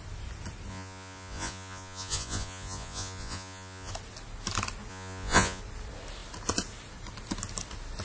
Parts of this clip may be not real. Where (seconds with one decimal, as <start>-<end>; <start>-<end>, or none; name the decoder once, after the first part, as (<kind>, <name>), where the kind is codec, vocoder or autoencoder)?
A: 0.7-3.9 (vocoder, Vocos); 4.9-5.6

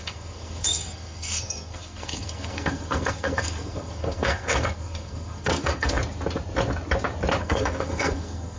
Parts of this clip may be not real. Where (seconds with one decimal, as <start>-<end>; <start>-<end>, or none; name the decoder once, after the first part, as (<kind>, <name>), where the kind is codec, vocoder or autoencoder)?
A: 0.0-6.0 (codec, SNAC); 7.4-8.6

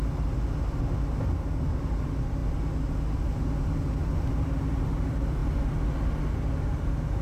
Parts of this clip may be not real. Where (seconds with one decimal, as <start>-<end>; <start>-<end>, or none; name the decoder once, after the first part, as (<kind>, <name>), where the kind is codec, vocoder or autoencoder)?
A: none

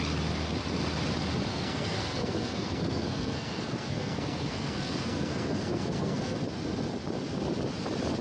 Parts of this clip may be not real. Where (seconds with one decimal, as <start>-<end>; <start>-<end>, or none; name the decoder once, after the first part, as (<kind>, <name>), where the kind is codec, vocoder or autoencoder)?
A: 1.5-6.4 (codec, SNAC)

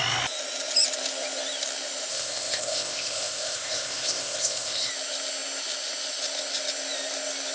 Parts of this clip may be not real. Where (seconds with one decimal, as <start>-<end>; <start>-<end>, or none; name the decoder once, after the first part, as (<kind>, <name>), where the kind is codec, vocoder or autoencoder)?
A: 2.1-4.9 (codec, ZipCodec)

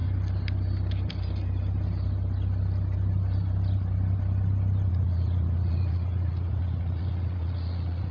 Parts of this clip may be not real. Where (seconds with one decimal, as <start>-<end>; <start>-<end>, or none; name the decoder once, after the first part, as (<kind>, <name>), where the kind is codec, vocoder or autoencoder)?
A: 4.9-8.1 (vocoder, Vocos)

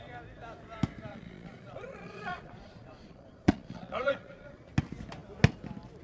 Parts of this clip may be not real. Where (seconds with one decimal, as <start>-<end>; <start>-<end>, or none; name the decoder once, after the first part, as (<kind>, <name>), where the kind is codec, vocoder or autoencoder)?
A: 1.1-4.7 (vocoder, Vocos)